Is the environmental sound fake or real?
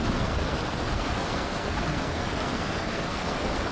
fake